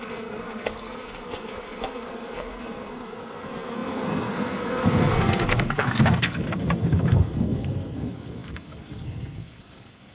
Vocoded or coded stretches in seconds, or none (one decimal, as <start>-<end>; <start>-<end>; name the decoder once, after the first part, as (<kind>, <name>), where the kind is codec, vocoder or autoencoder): 0.0-10.1 (codec, SNAC)